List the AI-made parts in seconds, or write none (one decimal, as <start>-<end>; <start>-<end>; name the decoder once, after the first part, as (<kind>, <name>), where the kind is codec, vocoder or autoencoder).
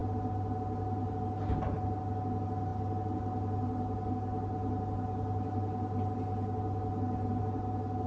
none